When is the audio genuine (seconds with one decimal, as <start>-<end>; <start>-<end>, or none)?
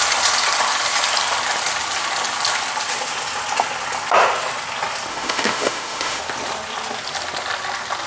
0.0-5.1; 6.2-8.1